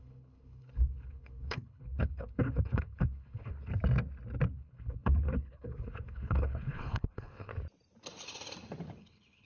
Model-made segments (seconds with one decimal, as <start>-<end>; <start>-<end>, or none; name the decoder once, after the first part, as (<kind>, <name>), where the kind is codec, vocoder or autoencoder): 0.0-3.7 (codec, HILCodec); 4.5-7.5; 9.0-9.5